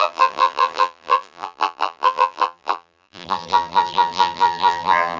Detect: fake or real fake